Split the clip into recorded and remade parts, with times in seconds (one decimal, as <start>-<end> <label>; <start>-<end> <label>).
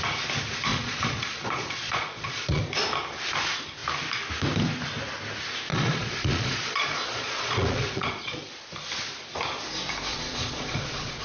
0.0-0.7 recorded; 0.7-2.6 remade; 2.6-5.7 recorded; 5.7-8.5 remade; 8.5-10.1 recorded; 10.1-11.2 remade